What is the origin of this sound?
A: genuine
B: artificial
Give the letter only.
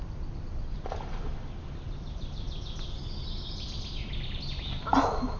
A